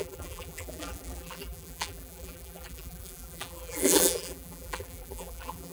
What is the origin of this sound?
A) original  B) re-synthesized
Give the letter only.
B